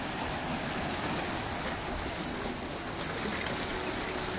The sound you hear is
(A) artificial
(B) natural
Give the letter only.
B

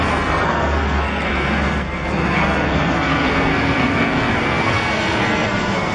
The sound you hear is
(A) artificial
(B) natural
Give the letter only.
A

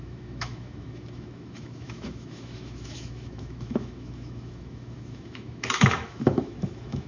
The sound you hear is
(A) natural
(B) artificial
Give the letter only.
B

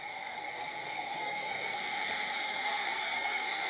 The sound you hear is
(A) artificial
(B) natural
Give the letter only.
A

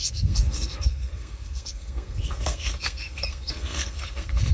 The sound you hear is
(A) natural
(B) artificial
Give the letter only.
B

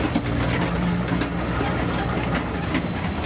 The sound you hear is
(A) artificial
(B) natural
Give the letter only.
B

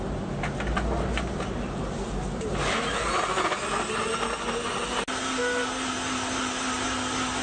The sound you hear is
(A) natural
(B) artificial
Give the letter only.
A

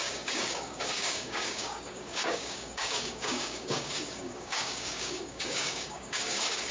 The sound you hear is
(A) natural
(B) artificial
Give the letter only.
B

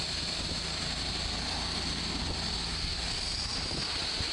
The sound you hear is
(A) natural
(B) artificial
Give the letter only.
A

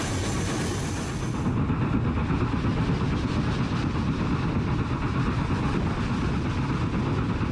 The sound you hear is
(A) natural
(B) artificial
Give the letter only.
A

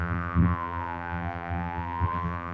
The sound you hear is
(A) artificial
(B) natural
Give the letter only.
A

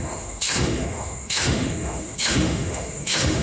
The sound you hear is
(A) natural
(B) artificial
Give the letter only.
B